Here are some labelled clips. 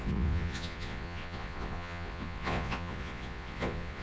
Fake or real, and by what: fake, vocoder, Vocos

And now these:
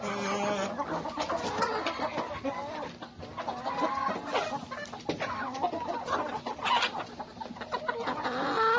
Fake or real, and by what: real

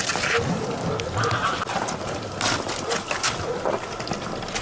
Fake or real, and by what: real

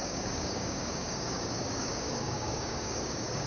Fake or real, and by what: fake, codec, DAC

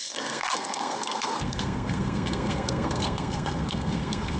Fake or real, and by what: fake, codec, SNAC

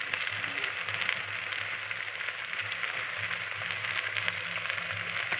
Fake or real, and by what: real